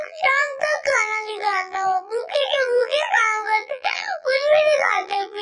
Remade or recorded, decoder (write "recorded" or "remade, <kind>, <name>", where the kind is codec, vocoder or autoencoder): remade, vocoder, BigVGAN v2